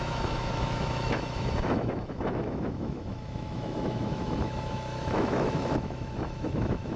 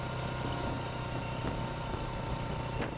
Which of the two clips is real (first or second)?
second